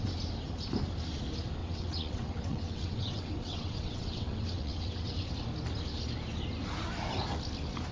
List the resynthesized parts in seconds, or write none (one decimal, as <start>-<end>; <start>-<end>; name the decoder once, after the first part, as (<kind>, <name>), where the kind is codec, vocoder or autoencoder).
1.6-5.3 (vocoder, WaveNeXt)